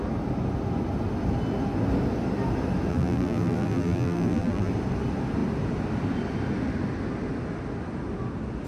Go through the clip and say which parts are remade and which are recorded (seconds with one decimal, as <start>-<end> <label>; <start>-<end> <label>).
0.0-2.9 recorded; 2.9-4.7 remade; 4.7-8.7 recorded

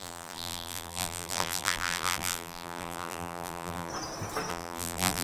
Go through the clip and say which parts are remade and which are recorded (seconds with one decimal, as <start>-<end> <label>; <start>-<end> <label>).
0.0-3.9 remade; 3.9-4.5 recorded; 4.5-5.2 remade

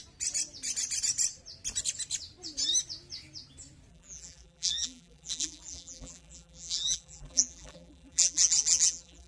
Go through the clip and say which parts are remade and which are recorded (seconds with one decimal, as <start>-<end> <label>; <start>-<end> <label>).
0.0-3.9 recorded; 3.9-9.3 remade

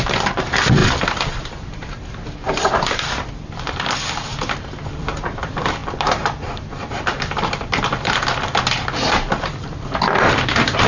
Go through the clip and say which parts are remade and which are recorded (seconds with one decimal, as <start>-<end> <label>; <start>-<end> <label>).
0.0-10.9 remade

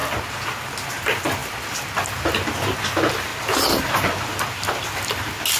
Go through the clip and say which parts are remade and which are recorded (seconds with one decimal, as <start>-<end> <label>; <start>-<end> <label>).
0.0-5.6 recorded

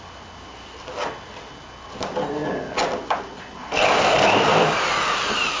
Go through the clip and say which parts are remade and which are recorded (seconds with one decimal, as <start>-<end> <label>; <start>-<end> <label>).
0.0-4.5 recorded; 4.5-5.6 remade

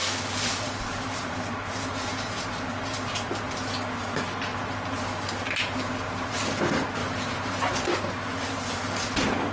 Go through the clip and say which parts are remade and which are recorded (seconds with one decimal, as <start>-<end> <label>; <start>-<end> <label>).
0.0-3.7 remade; 3.7-4.5 recorded; 4.5-6.3 remade; 6.3-7.0 recorded; 7.0-8.1 remade; 8.1-9.5 recorded